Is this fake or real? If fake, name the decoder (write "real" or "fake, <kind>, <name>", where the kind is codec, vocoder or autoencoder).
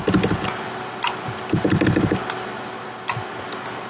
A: real